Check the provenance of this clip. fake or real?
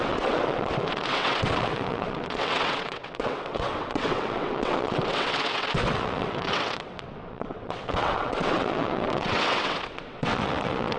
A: fake